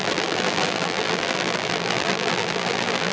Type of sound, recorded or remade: remade